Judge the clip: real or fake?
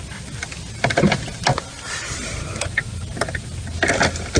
real